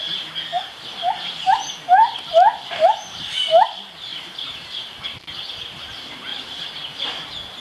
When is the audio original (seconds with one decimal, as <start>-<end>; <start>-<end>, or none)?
0.0-0.5; 1.6-4.1; 5.0-6.3; 7.1-7.6